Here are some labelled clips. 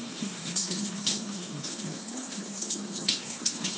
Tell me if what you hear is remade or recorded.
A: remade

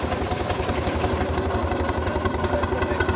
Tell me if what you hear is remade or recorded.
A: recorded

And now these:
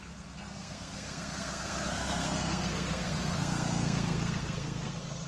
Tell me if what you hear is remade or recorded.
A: remade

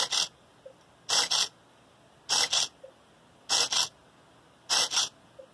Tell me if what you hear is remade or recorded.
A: recorded